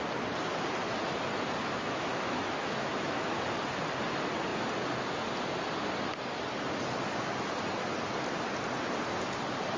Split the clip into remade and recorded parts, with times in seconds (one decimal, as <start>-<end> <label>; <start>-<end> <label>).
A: 0.0-1.6 recorded; 1.6-3.3 remade; 3.3-9.8 recorded